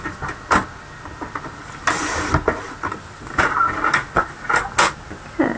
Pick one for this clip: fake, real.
real